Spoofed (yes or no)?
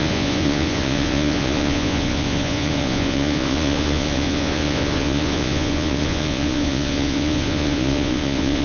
yes